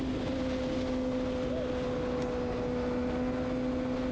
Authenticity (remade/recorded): recorded